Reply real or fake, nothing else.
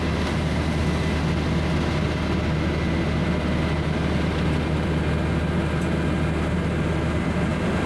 real